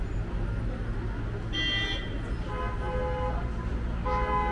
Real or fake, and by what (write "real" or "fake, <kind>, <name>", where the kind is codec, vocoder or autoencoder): real